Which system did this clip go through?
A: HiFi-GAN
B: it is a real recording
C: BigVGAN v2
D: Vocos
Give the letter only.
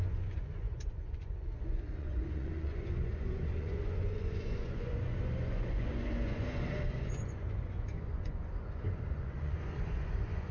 D